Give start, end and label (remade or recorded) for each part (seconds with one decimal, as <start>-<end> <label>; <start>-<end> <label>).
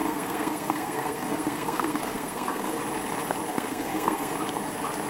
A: 0.0-2.8 remade; 2.8-3.5 recorded; 3.5-4.3 remade; 4.3-5.1 recorded